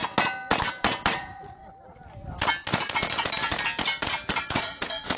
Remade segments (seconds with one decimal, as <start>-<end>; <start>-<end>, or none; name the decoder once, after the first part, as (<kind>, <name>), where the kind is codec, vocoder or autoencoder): 1.1-1.6 (vocoder, Vocos); 4.5-5.2